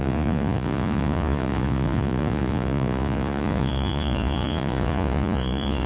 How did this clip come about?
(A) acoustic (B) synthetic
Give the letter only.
B